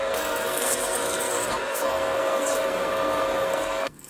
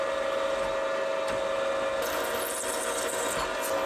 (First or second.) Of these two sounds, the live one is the second